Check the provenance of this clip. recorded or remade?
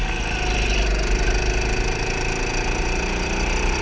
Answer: recorded